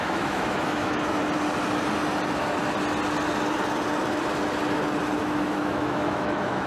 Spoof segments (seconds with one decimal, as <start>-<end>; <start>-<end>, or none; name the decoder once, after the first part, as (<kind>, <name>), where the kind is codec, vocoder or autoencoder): 0.0-1.2 (autoencoder, DAC-VAE); 5.2-6.7